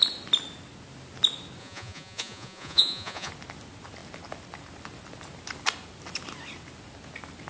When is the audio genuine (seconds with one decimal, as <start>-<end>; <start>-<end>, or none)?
0.0-1.6; 3.3-7.5